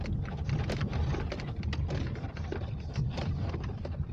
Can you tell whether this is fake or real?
fake